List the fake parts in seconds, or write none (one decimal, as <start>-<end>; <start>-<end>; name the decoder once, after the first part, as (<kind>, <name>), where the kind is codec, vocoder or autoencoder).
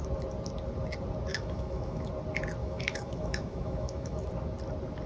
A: 1.3-2.1 (autoencoder, DAC-VAE); 2.6-4.3